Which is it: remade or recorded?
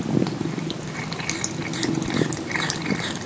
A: recorded